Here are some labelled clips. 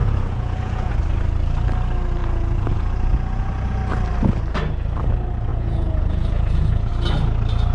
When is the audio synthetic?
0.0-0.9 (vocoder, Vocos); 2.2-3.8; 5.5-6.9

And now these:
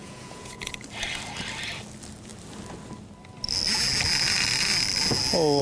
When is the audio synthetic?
0.0-0.7 (vocoder, Vocos)